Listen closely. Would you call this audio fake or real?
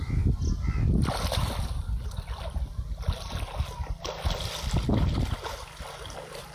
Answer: real